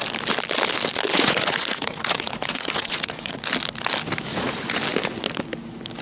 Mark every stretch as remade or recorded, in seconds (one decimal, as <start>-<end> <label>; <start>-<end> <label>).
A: 0.0-1.1 recorded; 1.1-3.4 remade; 3.4-4.3 recorded; 4.3-4.8 remade; 4.8-6.0 recorded